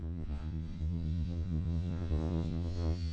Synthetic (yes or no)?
yes